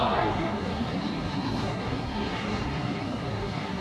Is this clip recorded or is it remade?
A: remade